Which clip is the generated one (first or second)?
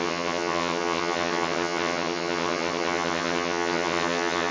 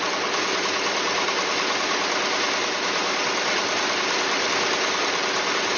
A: first